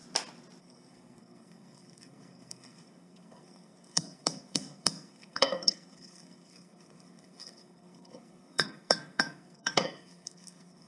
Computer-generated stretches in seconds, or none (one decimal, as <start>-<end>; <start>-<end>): 0.6-10.9